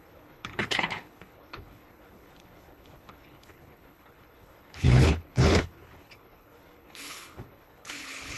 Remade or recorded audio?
remade